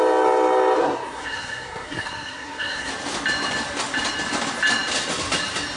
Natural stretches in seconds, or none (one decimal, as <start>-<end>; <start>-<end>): 0.0-0.8; 2.9-5.8